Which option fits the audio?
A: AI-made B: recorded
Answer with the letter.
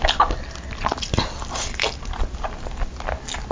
B